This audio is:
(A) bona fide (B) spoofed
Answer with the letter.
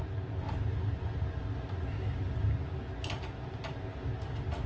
A